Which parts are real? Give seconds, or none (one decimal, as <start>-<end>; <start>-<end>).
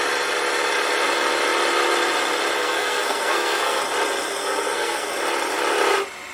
0.0-2.6; 3.8-4.4; 5.1-6.3